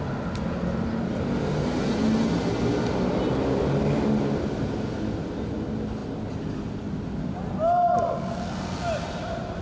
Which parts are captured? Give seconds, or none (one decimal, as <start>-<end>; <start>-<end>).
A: 0.0-9.6